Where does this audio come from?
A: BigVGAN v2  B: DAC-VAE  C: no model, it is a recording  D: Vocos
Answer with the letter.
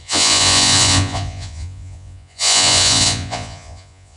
D